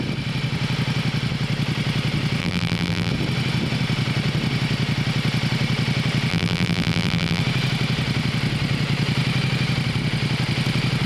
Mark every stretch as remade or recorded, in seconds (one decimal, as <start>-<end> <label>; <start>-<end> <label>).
0.0-2.4 recorded; 2.4-3.1 remade; 3.1-6.3 recorded; 6.3-7.4 remade; 7.4-11.1 recorded

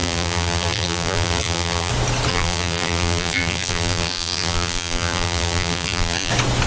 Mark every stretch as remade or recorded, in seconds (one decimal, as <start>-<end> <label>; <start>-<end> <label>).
0.0-1.9 remade; 1.9-2.3 recorded; 2.3-6.3 remade; 6.3-6.7 recorded

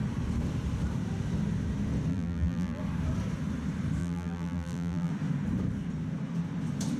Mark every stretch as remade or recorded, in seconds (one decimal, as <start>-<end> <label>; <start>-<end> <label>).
0.0-2.1 recorded; 2.1-2.8 remade; 2.8-4.0 recorded; 4.0-5.1 remade; 5.1-7.0 recorded

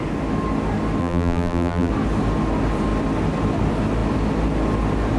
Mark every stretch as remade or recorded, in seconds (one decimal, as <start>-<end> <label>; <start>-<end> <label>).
0.0-1.0 recorded; 1.0-1.9 remade; 1.9-5.2 recorded

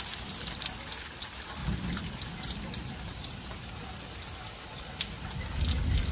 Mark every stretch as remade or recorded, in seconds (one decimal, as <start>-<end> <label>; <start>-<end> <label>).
0.0-1.6 recorded; 1.6-5.3 remade; 5.3-6.1 recorded